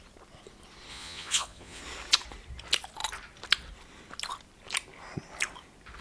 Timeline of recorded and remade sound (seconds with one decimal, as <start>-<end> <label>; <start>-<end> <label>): 0.0-0.9 recorded; 0.9-1.8 remade; 1.8-6.0 recorded